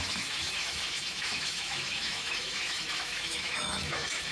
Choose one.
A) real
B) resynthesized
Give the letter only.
B